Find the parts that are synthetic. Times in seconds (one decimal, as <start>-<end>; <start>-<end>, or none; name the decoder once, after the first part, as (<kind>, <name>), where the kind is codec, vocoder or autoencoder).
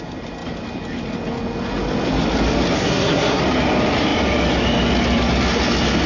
2.8-3.4 (codec, SNAC)